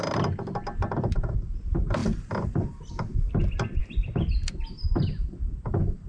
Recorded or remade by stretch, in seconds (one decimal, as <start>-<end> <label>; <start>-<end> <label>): 0.0-2.0 recorded; 2.0-2.9 remade; 2.9-3.8 recorded; 3.8-6.1 remade